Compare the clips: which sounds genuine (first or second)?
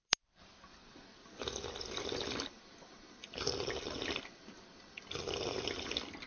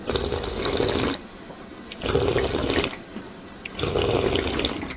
second